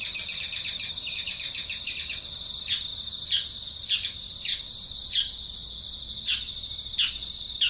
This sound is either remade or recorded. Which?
recorded